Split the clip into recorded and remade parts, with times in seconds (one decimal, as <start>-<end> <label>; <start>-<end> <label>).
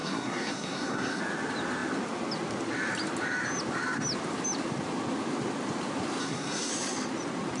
0.0-1.2 remade; 1.2-6.2 recorded; 6.2-6.7 remade; 6.7-7.6 recorded